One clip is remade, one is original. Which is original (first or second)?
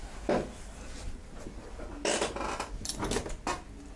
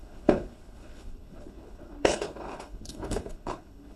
first